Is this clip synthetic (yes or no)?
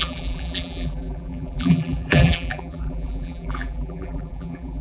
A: yes